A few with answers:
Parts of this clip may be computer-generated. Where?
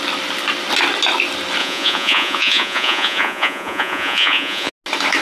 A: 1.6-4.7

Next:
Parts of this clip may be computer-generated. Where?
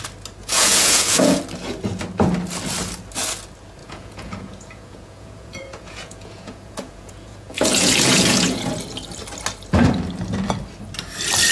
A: 0.4-1.4; 3.8-8.7